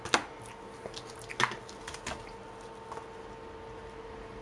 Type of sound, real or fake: real